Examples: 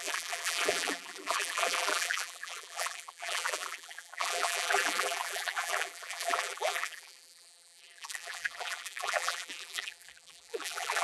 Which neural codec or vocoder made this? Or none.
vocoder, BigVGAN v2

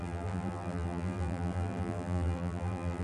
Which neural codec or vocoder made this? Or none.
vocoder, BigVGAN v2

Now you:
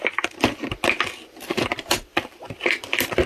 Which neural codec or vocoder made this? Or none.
vocoder, BigVGAN v2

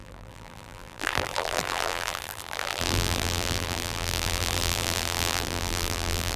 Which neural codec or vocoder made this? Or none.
vocoder, BigVGAN v2